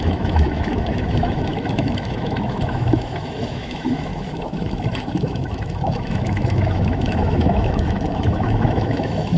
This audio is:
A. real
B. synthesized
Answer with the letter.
B